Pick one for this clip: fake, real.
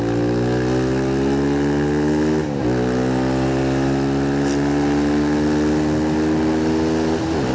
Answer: real